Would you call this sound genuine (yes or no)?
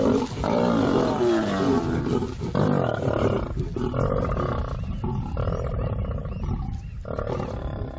yes